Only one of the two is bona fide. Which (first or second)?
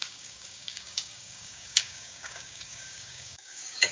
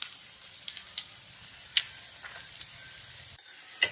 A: second